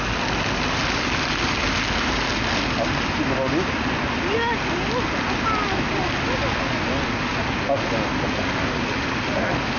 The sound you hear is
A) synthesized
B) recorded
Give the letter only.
B